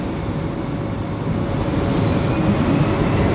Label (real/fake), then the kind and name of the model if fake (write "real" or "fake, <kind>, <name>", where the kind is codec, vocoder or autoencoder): real